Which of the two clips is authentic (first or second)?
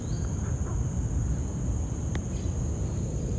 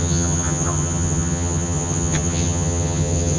first